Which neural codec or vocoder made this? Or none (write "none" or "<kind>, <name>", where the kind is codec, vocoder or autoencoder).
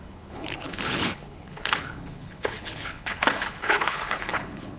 codec, HILCodec